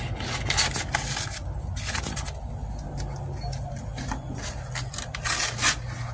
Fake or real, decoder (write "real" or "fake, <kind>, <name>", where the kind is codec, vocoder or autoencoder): real